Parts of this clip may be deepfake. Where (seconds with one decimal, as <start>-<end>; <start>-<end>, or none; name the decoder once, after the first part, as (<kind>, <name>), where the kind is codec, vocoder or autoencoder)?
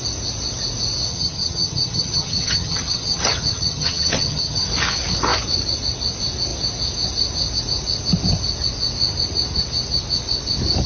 1.1-4.7 (vocoder, HiFi-GAN)